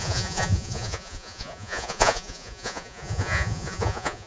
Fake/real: fake